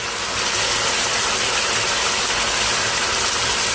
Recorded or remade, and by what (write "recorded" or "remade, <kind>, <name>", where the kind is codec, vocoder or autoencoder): recorded